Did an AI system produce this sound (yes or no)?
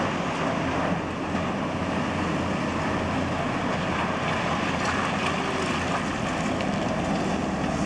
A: no